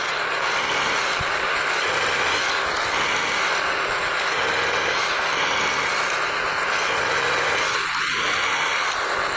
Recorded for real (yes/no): yes